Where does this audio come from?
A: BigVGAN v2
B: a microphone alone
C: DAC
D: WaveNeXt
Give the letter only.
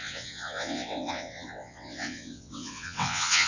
D